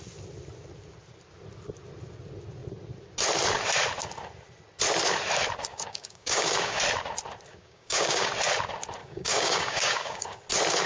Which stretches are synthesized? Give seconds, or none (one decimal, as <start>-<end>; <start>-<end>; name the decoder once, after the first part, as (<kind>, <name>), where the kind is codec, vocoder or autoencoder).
5.7-6.8 (codec, DAC); 7.5-8.3; 9.0-10.4